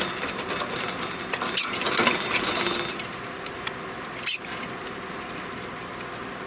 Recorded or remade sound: recorded